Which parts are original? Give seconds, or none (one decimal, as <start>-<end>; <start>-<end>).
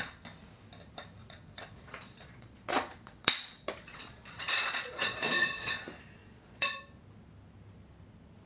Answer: 0.0-1.2; 5.7-6.2; 6.8-8.5